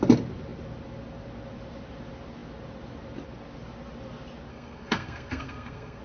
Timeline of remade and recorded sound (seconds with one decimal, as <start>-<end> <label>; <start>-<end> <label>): 0.0-4.5 recorded; 4.5-6.0 remade

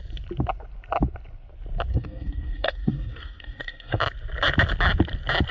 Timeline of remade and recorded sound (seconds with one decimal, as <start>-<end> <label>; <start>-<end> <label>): 0.0-1.9 recorded; 1.9-4.0 remade; 4.0-5.5 recorded

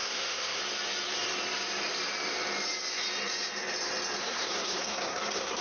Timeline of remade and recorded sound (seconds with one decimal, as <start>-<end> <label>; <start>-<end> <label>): 0.0-0.6 remade; 0.6-4.2 recorded; 4.2-5.6 remade

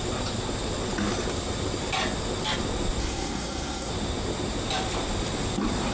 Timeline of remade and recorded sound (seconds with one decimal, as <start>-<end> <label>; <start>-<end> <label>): 0.0-3.0 recorded; 3.0-3.9 remade; 3.9-5.9 recorded

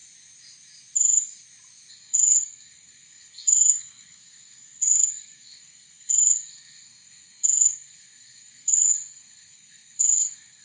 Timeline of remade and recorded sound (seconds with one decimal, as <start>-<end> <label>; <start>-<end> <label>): 0.0-1.9 recorded; 1.9-10.6 remade

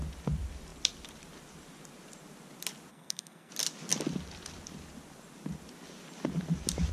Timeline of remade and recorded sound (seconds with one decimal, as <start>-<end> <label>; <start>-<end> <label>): 0.0-2.9 recorded; 2.9-3.5 remade; 3.5-6.9 recorded

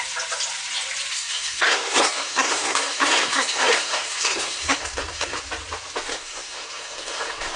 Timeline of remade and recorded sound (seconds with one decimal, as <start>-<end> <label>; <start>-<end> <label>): 0.0-1.1 recorded; 1.1-5.4 remade; 5.4-6.1 recorded; 6.1-7.6 remade